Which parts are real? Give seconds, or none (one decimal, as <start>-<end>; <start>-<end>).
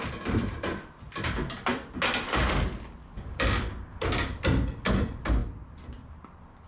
0.0-6.7